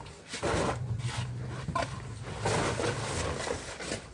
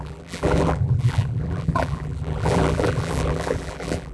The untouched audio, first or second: first